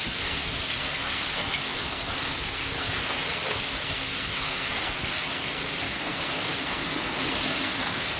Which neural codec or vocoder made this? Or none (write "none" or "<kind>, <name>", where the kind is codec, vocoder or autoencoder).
codec, SNAC